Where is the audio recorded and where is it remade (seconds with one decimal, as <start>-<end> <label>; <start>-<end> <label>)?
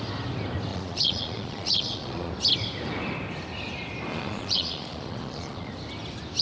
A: 0.0-0.7 recorded; 0.7-2.3 remade; 2.3-4.1 recorded; 4.1-5.7 remade; 5.7-6.4 recorded